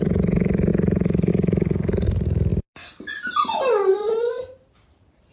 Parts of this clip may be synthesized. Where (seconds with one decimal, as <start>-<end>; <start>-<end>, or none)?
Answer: 0.0-2.5; 4.7-5.3